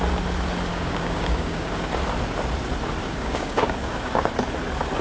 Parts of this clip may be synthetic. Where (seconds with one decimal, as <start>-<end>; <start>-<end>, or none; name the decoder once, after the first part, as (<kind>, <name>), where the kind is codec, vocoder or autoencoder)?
0.7-1.7 (codec, DAC); 3.0-4.3